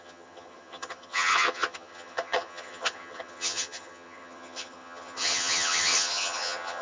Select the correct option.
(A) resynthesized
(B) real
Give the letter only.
A